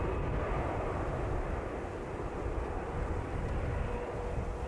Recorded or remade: recorded